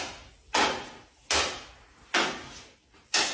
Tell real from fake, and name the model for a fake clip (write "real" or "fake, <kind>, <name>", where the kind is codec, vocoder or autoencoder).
real